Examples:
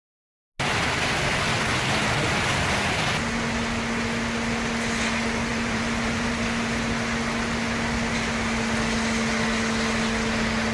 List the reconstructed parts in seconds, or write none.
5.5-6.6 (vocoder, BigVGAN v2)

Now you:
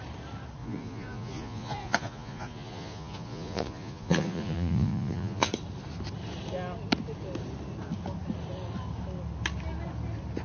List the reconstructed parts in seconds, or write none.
0.6-5.5 (vocoder, Vocos)

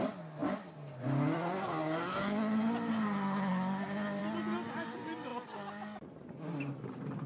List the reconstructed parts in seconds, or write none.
none

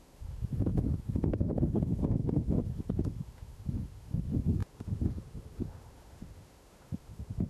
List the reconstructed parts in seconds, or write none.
0.0-7.5 (autoencoder, DAC-VAE)